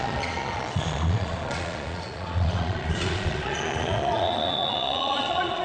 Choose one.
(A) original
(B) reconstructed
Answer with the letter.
B